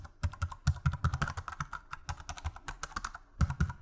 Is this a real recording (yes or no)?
yes